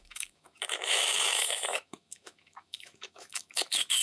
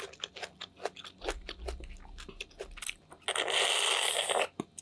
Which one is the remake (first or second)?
first